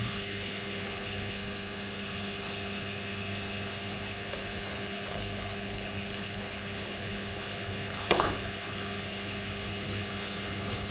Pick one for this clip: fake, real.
fake